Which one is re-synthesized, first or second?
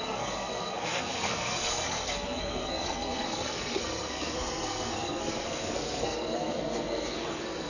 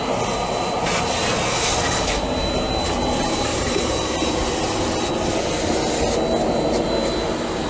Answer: first